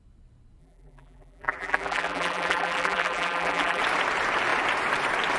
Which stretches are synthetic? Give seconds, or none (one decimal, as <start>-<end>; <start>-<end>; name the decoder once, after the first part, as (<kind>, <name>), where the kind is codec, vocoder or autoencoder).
0.6-3.8 (vocoder, BigVGAN v2)